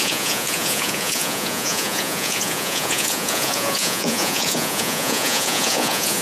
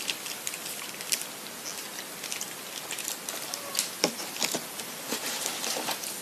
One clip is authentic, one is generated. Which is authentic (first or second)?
second